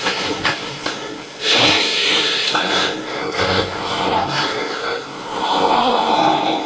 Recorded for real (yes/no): no